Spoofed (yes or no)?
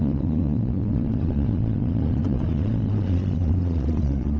yes